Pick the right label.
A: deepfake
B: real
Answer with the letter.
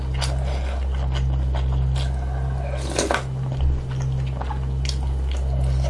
B